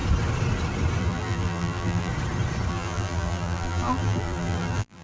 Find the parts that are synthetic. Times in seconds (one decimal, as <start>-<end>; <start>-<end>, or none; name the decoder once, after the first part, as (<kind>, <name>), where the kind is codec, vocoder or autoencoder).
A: 1.0-2.1 (vocoder, BigVGAN v2); 2.7-5.0